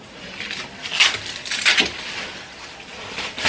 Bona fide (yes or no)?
yes